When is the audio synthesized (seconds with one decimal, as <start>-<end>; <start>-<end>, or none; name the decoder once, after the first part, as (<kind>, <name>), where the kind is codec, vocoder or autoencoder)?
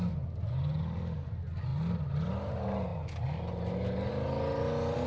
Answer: none